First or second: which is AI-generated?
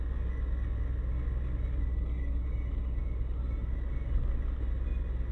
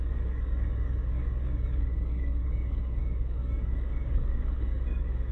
second